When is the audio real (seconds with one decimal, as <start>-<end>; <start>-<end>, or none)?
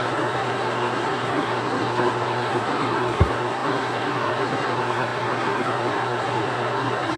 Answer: none